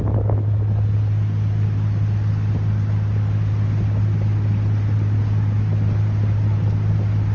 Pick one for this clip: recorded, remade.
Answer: recorded